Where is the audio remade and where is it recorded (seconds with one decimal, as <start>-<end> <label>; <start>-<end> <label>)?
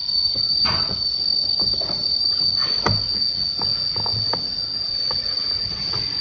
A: 0.0-2.3 remade; 2.3-6.2 recorded